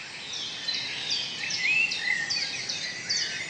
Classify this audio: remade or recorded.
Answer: recorded